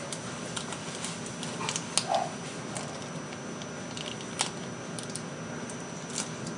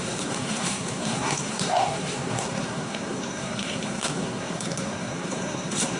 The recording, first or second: first